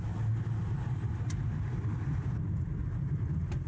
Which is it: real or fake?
real